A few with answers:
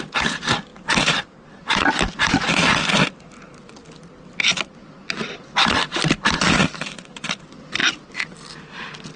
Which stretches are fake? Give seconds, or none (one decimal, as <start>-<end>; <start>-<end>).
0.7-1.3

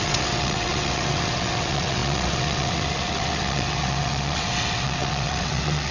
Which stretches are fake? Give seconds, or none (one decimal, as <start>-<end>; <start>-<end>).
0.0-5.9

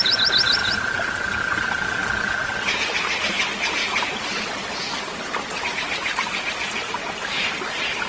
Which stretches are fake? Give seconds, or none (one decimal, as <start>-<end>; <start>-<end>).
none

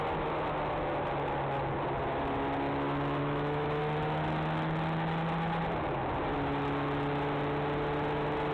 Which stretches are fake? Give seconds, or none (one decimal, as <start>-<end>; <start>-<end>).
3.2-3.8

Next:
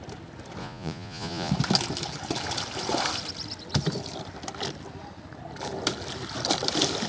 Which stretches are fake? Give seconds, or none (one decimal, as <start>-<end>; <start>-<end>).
0.6-1.5

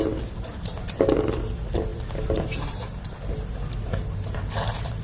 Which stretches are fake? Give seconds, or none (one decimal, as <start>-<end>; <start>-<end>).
none

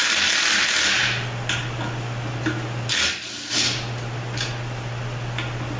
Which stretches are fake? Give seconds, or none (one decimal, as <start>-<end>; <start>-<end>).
none